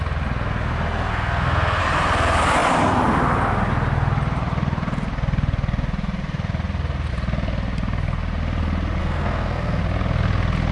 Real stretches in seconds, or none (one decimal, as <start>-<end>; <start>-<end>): 0.0-1.1; 1.8-9.0; 9.8-10.7